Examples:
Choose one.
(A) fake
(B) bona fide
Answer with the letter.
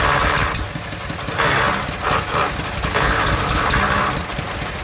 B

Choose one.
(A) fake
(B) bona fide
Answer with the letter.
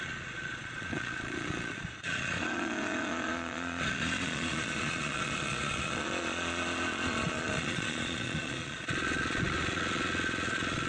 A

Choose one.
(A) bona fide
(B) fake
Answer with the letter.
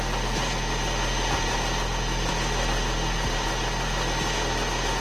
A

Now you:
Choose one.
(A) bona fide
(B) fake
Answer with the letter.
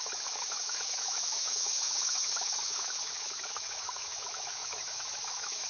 B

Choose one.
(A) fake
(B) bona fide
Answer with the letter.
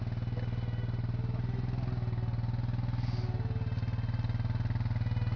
B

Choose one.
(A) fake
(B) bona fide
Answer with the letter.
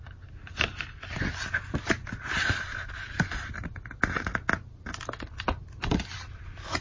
B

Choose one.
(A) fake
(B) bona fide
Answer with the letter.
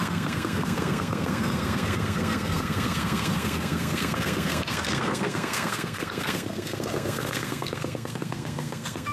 A